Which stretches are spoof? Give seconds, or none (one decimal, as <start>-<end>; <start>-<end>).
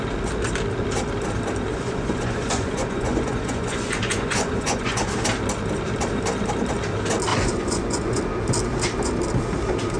1.7-5.1; 7.3-8.2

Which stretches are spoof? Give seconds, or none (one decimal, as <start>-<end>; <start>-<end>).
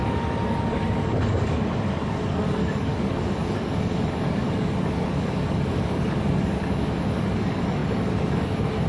0.0-8.9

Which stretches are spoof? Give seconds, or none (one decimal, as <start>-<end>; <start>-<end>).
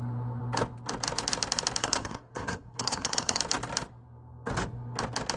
1.8-3.4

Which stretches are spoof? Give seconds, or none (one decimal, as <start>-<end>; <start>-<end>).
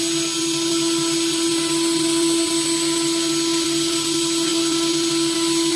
none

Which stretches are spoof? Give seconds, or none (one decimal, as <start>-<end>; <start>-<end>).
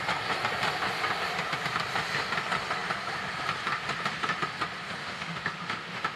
5.0-6.2